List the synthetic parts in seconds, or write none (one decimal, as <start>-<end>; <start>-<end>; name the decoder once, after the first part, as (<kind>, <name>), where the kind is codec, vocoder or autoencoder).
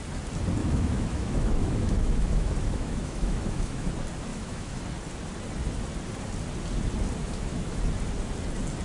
0.6-3.9 (autoencoder, DAC-VAE); 4.3-4.8; 7.2-7.8